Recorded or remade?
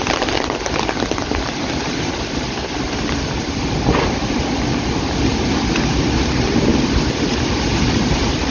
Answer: recorded